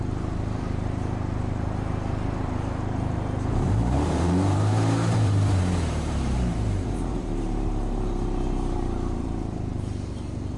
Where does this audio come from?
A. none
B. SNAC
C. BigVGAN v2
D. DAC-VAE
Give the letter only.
C